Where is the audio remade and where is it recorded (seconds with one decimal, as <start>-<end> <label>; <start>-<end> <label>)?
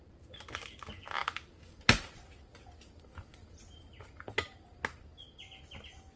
0.0-6.2 recorded